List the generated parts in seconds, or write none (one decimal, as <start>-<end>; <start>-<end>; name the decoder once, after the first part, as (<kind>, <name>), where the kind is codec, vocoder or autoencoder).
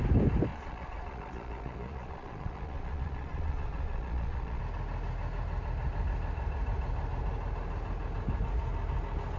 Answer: 0.5-4.6 (vocoder, Vocos)